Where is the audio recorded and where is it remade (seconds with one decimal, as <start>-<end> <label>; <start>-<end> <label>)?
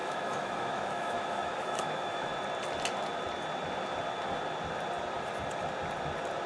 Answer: 0.0-2.3 remade; 2.3-6.5 recorded